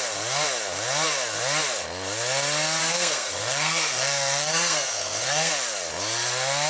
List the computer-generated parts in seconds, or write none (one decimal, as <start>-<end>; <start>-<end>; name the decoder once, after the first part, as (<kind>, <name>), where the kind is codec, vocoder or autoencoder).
2.8-5.5 (codec, SNAC)